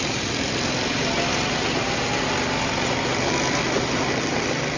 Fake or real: real